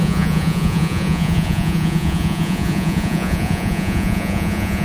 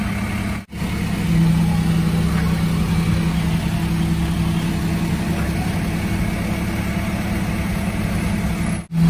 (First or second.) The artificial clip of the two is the first